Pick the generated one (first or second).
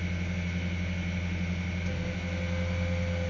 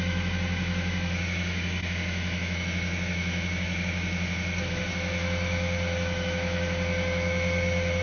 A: second